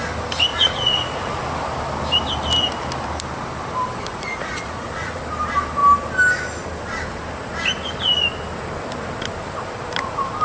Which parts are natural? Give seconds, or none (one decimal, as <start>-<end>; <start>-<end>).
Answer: 0.0-0.5; 1.4-4.1; 5.2-10.4